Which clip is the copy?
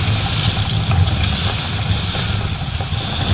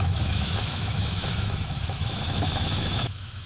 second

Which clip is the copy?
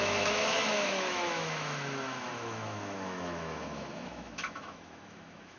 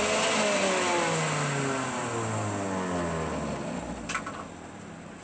first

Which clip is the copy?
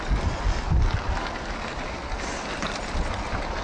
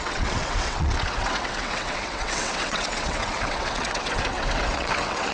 second